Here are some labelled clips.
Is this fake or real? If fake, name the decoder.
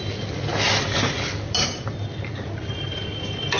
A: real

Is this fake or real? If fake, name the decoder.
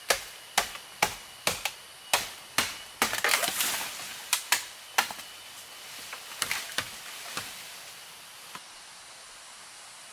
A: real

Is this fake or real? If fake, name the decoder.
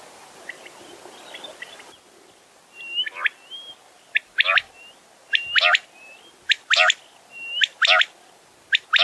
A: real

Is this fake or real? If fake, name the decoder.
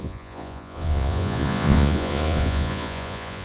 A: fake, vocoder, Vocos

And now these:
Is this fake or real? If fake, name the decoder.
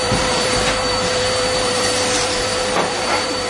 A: fake, vocoder, BigVGAN v2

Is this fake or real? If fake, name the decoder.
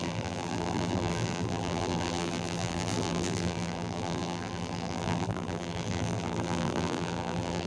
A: fake, vocoder, BigVGAN v2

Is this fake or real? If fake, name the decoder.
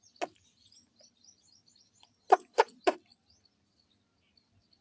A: real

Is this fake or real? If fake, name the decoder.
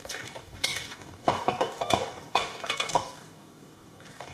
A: fake, codec, DAC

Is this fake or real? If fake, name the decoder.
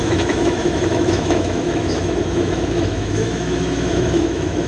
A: fake, autoencoder, DAC-VAE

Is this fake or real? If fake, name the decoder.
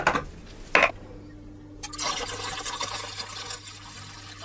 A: real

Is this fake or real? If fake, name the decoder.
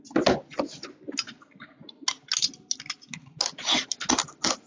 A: real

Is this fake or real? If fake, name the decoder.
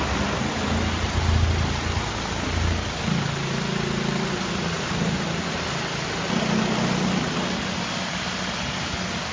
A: real